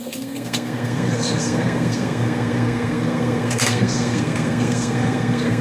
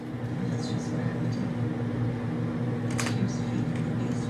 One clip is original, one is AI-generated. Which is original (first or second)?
second